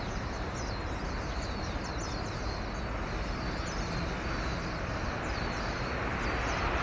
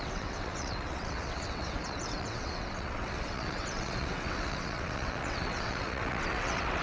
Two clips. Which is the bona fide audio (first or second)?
first